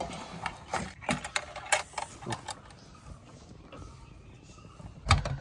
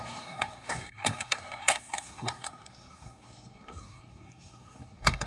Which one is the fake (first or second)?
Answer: second